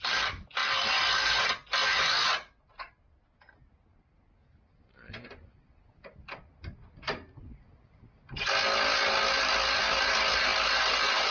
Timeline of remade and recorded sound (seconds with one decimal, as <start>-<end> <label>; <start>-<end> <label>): 0.0-11.3 recorded